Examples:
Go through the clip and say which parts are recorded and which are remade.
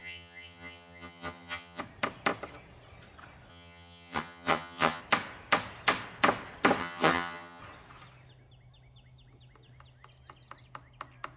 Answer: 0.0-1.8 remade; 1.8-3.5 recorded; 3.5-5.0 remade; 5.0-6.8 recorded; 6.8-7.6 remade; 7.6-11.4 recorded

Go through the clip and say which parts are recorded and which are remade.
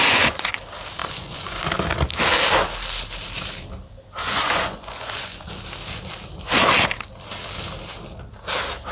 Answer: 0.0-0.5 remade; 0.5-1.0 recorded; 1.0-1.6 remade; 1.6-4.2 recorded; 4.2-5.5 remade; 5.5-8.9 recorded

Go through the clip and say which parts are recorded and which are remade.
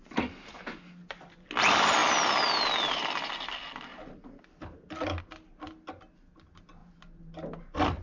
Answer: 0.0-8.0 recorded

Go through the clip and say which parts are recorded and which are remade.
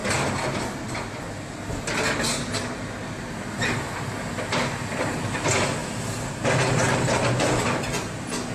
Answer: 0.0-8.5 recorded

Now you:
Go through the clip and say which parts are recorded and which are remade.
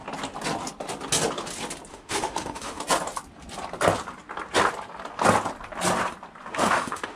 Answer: 0.0-1.9 recorded; 1.9-2.8 remade; 2.8-6.5 recorded; 6.5-7.2 remade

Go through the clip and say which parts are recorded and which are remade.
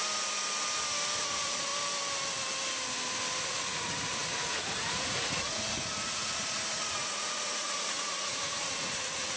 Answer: 0.0-1.2 recorded; 1.2-1.7 remade; 1.7-3.4 recorded; 3.4-9.4 remade